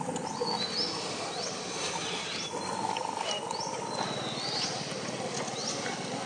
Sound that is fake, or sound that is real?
real